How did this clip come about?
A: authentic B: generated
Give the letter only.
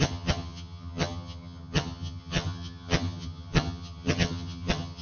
B